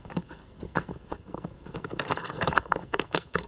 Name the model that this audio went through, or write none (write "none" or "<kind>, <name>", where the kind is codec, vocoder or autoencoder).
codec, SNAC